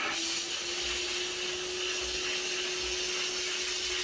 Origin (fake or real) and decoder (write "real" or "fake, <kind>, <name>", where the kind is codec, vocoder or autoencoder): real